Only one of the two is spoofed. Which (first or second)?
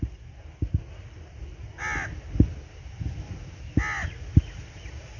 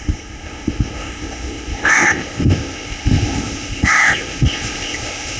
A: second